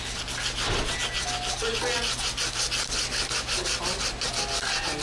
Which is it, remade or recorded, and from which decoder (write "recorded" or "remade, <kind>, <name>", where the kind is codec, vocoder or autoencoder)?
recorded